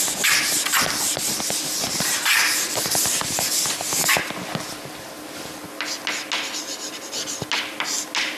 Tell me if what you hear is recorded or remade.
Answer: recorded